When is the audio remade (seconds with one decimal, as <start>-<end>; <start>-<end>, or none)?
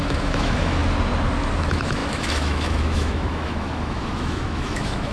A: 0.0-0.8; 1.6-5.1